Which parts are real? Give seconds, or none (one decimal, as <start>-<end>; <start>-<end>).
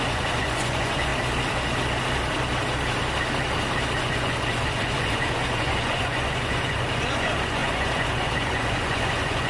1.1-4.0